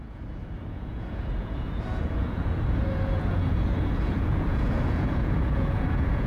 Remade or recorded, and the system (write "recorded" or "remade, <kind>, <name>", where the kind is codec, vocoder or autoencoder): remade, vocoder, Vocos